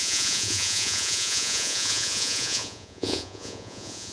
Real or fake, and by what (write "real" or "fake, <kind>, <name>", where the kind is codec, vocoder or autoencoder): fake, vocoder, Vocos